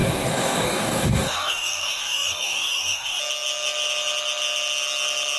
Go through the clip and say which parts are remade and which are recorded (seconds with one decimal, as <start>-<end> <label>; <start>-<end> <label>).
0.0-3.2 remade; 3.2-5.4 recorded